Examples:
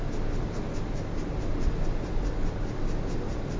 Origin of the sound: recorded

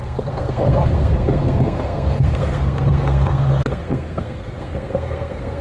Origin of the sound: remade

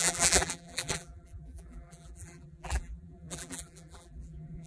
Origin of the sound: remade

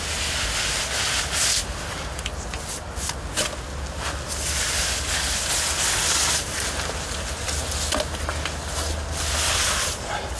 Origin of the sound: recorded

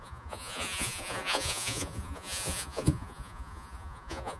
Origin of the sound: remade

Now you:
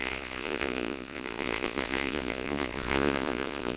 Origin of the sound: remade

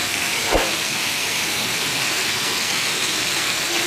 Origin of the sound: remade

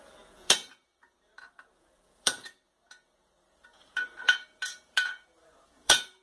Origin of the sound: remade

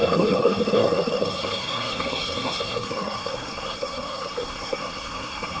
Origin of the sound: remade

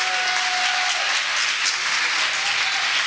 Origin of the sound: recorded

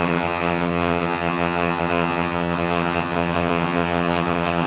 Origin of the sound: remade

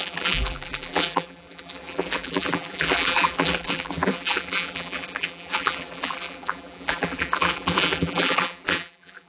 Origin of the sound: remade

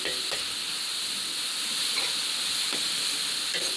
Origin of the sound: recorded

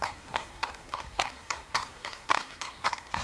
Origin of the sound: remade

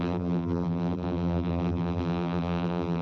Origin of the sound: remade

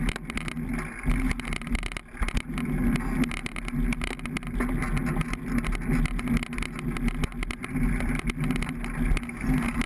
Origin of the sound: recorded